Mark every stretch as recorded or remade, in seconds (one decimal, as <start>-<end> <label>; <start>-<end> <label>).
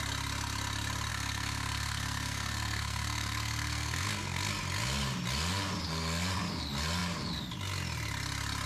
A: 0.0-1.1 recorded; 1.1-4.5 remade; 4.5-8.7 recorded